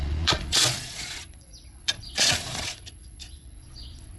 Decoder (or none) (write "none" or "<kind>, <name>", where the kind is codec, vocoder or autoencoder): vocoder, Vocos